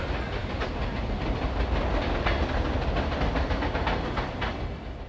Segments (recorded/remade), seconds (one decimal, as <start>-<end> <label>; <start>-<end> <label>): 0.0-5.1 recorded